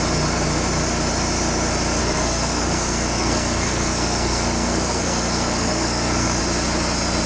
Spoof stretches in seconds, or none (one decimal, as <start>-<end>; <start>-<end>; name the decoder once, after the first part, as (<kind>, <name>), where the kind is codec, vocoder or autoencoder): 2.0-6.4 (codec, SNAC)